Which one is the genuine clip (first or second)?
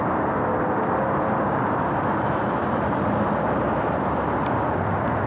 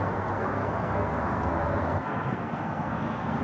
first